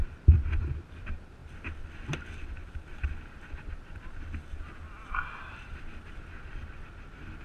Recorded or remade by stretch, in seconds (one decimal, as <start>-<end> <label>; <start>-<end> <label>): 0.0-7.4 recorded